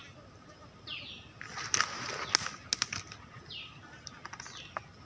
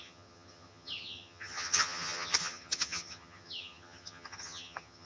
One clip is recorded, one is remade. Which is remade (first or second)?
second